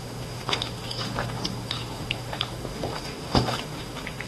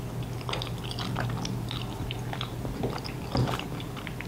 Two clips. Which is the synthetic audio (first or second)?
first